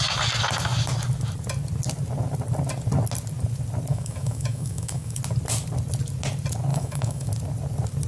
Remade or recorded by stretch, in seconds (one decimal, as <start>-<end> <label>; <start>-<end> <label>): 0.0-3.9 recorded; 3.9-5.2 remade; 5.2-6.7 recorded; 6.7-7.3 remade; 7.3-8.1 recorded